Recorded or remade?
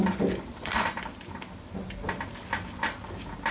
recorded